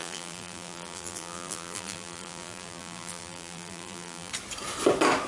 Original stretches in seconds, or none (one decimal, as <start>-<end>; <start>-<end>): 4.3-5.3